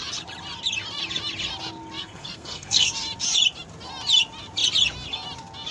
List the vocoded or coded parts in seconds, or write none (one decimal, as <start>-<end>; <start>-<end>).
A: 2.0-2.9